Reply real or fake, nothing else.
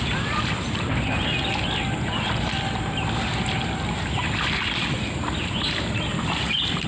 real